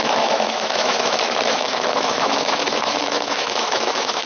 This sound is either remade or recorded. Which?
remade